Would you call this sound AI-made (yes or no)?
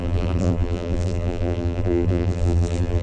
yes